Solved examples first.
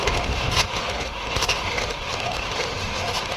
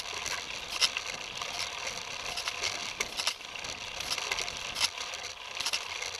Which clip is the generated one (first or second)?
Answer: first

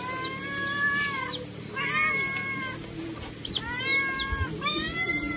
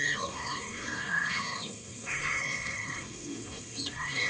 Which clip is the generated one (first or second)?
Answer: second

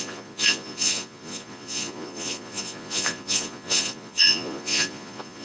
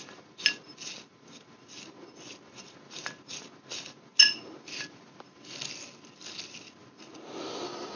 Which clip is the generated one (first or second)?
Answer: first